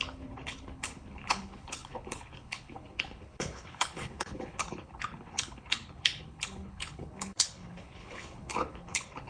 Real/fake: fake